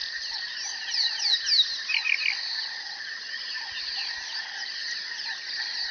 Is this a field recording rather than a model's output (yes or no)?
yes